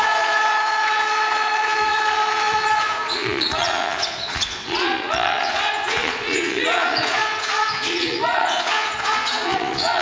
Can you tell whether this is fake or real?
fake